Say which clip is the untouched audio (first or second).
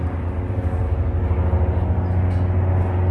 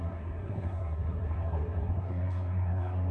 first